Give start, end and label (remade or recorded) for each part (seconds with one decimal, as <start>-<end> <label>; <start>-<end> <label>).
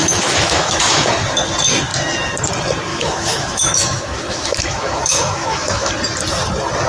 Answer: 0.0-1.1 remade; 1.1-2.9 recorded; 2.9-5.9 remade; 5.9-6.9 recorded